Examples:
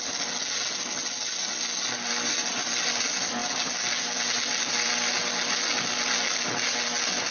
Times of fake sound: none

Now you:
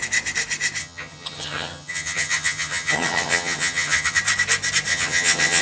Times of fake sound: 0.8-4.2 (vocoder, HiFi-GAN); 4.9-5.6

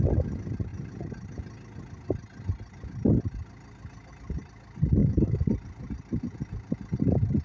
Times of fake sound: 5.0-5.5 (autoencoder, DAC-VAE)